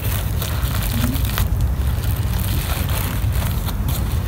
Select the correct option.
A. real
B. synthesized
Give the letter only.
A